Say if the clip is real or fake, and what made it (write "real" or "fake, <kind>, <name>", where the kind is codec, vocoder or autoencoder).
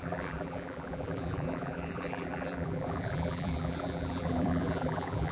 fake, vocoder, BigVGAN v2